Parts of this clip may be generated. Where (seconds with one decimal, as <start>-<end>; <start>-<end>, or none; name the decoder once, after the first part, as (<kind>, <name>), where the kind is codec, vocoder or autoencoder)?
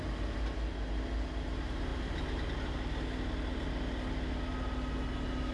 none